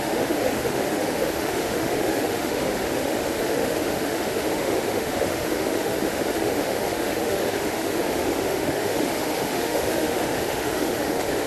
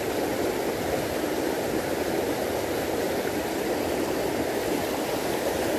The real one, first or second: second